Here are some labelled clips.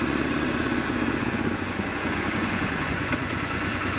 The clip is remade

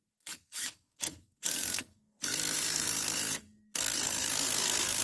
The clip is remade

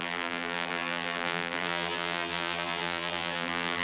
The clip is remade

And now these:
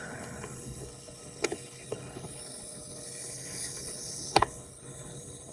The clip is remade